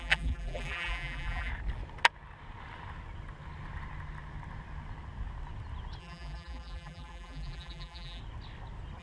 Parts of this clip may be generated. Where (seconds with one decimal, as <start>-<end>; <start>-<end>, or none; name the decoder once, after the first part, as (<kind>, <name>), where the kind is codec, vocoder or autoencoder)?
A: 0.0-1.5 (vocoder, BigVGAN v2); 6.0-8.2